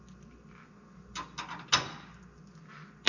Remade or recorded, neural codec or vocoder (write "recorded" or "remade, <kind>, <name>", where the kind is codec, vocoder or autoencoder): recorded